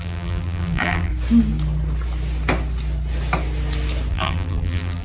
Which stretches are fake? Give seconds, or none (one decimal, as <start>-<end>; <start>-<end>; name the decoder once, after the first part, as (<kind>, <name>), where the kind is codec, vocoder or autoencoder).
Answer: 0.0-1.1 (vocoder, BigVGAN v2); 4.1-5.0